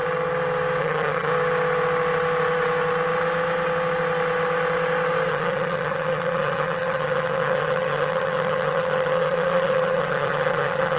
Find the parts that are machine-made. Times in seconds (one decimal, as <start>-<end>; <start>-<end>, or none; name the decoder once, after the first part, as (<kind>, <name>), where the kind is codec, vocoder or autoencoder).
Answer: 0.8-1.3 (vocoder, HiFi-GAN); 5.3-11.0